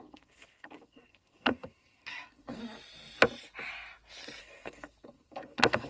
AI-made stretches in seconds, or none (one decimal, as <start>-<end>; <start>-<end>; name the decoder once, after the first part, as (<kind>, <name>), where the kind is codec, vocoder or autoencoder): 0.0-2.6 (codec, SNAC); 4.4-5.9